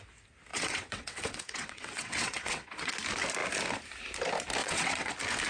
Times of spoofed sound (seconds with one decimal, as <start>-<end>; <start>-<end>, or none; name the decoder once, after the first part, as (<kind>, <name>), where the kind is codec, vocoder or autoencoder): 0.5-2.9 (vocoder, WaveNeXt); 4.6-5.1